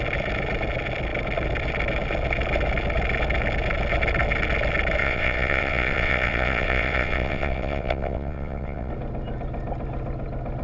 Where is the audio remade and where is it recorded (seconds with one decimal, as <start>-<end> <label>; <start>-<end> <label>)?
0.0-5.0 recorded; 5.0-8.9 remade; 8.9-10.6 recorded